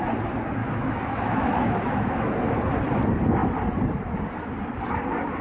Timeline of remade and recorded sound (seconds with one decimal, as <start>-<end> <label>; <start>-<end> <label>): 0.0-0.6 recorded; 0.6-2.3 remade; 2.3-5.4 recorded